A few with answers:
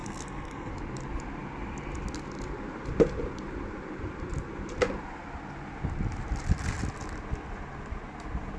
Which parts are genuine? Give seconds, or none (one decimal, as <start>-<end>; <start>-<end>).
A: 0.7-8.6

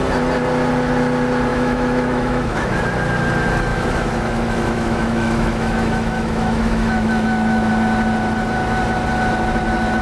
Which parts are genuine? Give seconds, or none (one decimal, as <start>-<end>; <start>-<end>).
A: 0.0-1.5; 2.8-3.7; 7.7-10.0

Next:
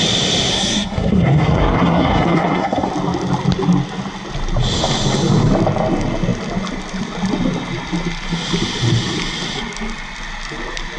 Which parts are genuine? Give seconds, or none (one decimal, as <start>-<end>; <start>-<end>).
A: 0.0-0.5; 2.9-11.0

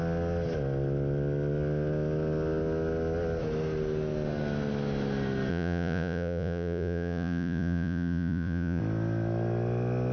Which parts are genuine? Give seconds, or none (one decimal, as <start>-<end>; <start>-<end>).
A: 0.0-5.5; 8.8-10.1

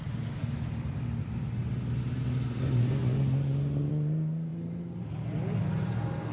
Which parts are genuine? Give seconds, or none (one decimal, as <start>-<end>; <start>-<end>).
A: 0.0-6.3

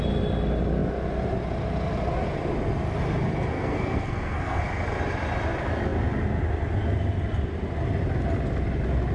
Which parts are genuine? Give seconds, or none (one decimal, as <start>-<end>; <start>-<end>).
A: 0.0-3.5; 4.6-9.1